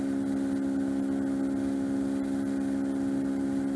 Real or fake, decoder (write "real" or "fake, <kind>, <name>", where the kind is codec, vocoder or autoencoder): real